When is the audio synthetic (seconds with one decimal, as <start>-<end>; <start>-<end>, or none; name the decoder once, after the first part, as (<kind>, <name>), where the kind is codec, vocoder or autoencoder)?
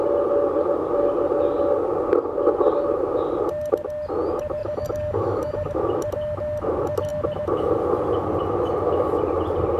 4.6-5.7 (codec, DAC)